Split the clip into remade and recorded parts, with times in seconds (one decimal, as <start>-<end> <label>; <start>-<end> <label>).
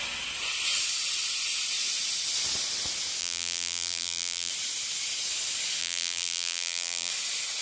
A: 0.0-3.2 recorded; 3.2-4.5 remade; 4.5-5.8 recorded; 5.8-7.1 remade; 7.1-7.6 recorded